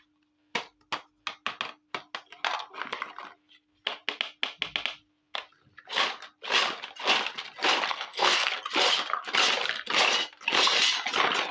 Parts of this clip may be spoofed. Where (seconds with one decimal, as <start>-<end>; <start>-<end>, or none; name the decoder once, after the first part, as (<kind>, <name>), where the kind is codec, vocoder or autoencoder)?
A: 7.9-8.5 (codec, SNAC)